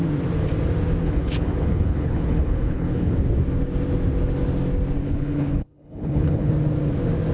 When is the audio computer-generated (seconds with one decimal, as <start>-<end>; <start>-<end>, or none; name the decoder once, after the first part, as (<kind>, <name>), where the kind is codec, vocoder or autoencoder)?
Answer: 1.0-3.1 (codec, HILCodec); 5.0-6.5